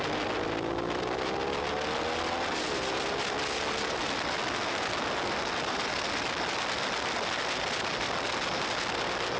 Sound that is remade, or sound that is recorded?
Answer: recorded